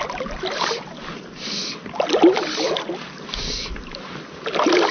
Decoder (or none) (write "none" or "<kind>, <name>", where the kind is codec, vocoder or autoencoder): none